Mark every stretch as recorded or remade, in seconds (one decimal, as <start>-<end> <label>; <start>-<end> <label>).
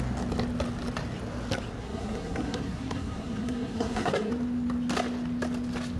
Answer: 0.0-1.8 recorded; 1.8-4.3 remade; 4.3-6.0 recorded